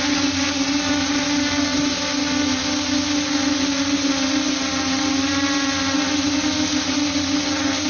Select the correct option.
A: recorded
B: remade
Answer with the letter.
A